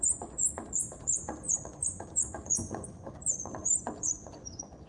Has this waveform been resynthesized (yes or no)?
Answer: yes